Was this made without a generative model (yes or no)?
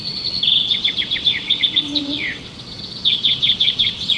no